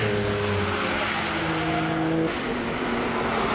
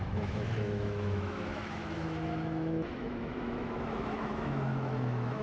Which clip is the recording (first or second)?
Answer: first